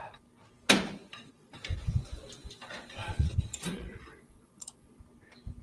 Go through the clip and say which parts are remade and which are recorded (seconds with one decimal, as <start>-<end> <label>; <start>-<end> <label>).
0.0-1.0 recorded; 1.0-1.6 remade; 1.6-3.0 recorded; 3.0-5.0 remade; 5.0-5.6 recorded